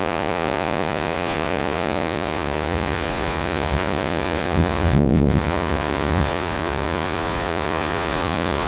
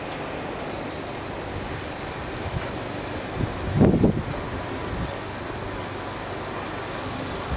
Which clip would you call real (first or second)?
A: second